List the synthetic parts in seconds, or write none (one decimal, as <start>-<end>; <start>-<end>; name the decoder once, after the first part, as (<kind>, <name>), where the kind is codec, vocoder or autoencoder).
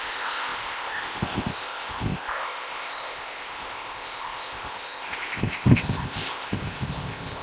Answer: 0.0-7.4 (codec, ZipCodec)